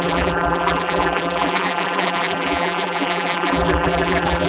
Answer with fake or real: fake